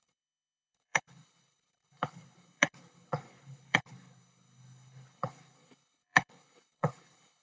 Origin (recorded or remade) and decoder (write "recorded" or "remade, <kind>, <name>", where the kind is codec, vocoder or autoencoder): remade, codec, HILCodec